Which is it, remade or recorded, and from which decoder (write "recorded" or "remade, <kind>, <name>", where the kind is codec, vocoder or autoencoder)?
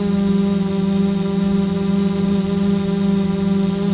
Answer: recorded